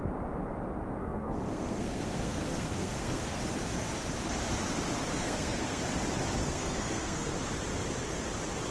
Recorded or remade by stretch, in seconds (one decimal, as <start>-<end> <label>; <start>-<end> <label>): 0.0-1.0 recorded; 1.0-3.4 remade; 3.4-5.1 recorded; 5.1-5.8 remade; 5.8-6.4 recorded; 6.4-7.3 remade; 7.3-8.7 recorded